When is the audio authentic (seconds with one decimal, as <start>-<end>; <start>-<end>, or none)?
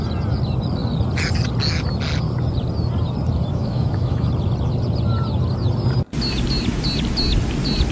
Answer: 0.0-3.5; 4.3-7.9